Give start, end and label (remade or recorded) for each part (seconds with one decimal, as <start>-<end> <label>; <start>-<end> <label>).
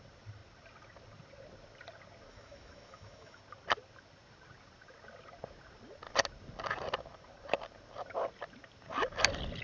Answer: 0.0-2.3 recorded; 2.3-3.4 remade; 3.4-9.6 recorded